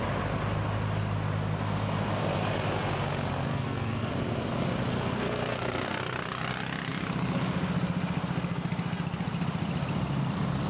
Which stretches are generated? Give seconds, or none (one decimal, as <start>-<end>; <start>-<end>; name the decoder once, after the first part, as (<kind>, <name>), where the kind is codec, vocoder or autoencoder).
3.5-4.1 (codec, SNAC); 4.9-6.0